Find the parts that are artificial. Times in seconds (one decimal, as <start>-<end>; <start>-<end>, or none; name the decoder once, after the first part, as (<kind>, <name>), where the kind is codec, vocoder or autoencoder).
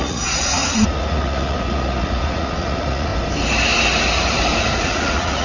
0.0-3.1 (vocoder, Vocos); 4.8-5.4